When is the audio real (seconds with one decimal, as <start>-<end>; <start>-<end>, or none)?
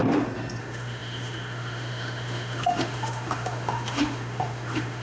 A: 0.0-0.6